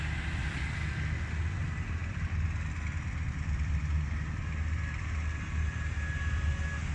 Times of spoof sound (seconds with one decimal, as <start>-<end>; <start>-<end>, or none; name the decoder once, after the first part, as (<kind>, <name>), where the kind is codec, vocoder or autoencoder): none